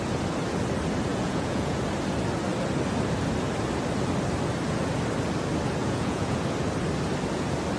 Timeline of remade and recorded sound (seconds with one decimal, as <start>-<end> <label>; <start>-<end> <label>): 0.0-1.1 recorded; 1.1-1.8 remade; 1.8-5.8 recorded; 5.8-6.4 remade; 6.4-7.8 recorded